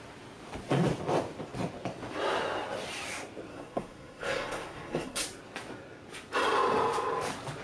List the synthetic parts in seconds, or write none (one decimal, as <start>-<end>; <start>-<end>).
3.5-5.2